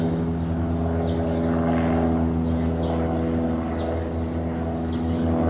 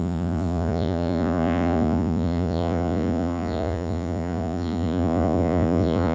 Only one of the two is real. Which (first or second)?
first